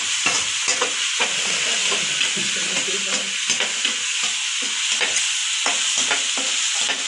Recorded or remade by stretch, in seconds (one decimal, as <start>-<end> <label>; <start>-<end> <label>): 0.0-7.1 recorded